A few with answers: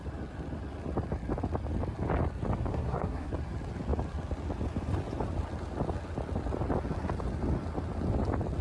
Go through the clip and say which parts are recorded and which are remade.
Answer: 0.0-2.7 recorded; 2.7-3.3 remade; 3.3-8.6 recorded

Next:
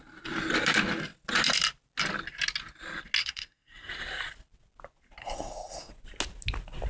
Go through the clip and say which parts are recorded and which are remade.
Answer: 0.0-3.2 recorded; 3.2-3.9 remade; 3.9-5.2 recorded; 5.2-5.9 remade; 5.9-6.9 recorded

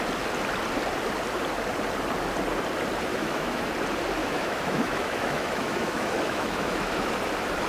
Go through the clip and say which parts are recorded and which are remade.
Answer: 0.0-3.1 recorded; 3.1-3.6 remade; 3.6-4.2 recorded; 4.2-7.1 remade; 7.1-7.7 recorded

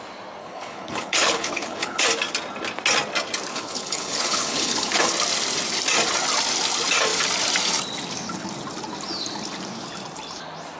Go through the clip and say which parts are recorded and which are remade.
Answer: 0.0-0.4 recorded; 0.4-2.0 remade; 2.0-3.5 recorded; 3.5-5.1 remade; 5.1-10.8 recorded

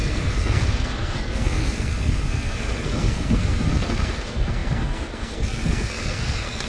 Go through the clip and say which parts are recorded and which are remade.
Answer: 0.0-6.7 remade

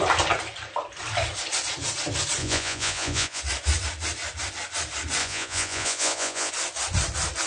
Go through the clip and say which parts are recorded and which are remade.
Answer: 0.0-2.4 recorded; 2.4-3.4 remade; 3.4-5.2 recorded; 5.2-6.5 remade; 6.5-7.5 recorded

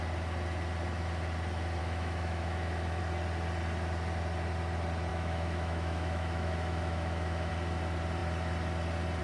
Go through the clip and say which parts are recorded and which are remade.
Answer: 0.0-1.8 recorded; 1.8-3.0 remade; 3.0-5.1 recorded; 5.1-7.5 remade; 7.5-9.2 recorded

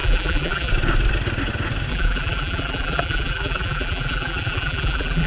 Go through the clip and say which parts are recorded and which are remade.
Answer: 0.0-0.7 remade; 0.7-1.9 recorded; 1.9-5.3 remade